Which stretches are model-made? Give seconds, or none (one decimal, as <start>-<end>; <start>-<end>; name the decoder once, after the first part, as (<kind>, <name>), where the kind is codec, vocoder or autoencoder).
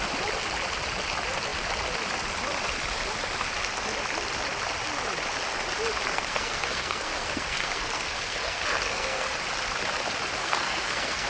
6.1-9.4 (codec, SNAC); 10.4-11.3